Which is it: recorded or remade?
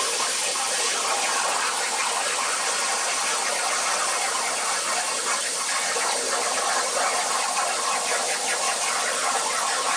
remade